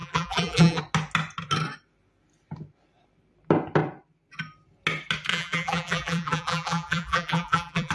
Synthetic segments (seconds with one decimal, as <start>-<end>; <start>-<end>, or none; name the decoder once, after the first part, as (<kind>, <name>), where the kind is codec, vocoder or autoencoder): 0.0-0.8 (vocoder, BigVGAN v2); 5.3-7.9